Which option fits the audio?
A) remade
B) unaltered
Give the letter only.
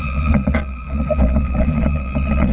A